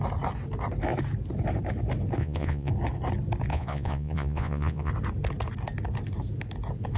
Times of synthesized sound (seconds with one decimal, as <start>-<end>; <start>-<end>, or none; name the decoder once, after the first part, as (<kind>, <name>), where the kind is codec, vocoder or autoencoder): 2.2-2.7 (vocoder, Vocos); 3.5-4.9